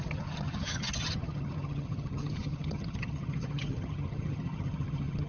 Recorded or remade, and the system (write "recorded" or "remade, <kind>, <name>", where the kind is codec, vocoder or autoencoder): remade, vocoder, HiFi-GAN